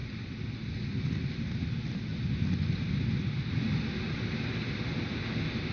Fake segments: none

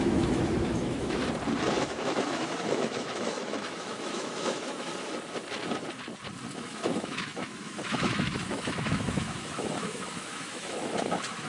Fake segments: 0.0-1.2; 1.8-4.9; 6.5-11.5

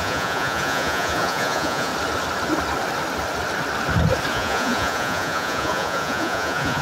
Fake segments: 0.0-1.9; 4.3-6.8

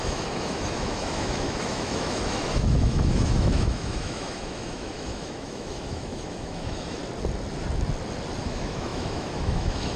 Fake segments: 0.0-7.0; 8.4-10.0

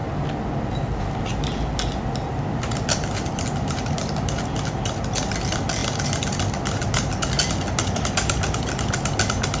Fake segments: none